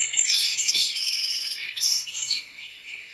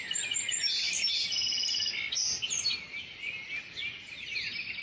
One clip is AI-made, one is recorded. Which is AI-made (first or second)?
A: first